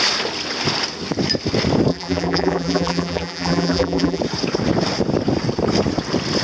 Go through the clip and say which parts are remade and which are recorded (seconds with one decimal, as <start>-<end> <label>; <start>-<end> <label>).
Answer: 0.0-1.9 recorded; 1.9-4.2 remade; 4.2-6.4 recorded